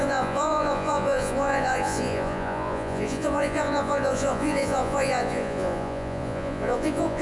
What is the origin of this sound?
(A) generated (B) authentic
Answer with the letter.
A